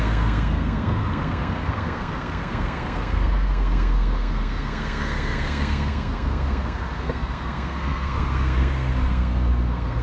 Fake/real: fake